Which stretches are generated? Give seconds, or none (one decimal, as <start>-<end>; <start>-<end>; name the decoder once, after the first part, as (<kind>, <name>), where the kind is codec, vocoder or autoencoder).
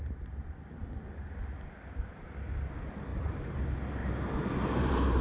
0.0-0.8 (vocoder, BigVGAN v2); 2.6-4.0; 4.5-5.2